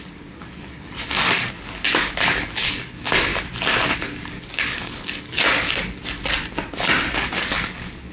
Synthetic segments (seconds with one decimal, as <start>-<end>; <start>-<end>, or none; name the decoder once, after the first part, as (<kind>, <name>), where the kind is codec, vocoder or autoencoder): 0.0-3.3 (codec, DAC); 4.3-6.0; 7.1-8.1